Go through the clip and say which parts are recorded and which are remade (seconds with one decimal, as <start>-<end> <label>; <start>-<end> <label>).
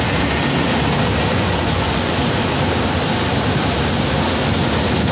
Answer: 0.0-1.3 recorded; 1.3-2.1 remade; 2.1-5.1 recorded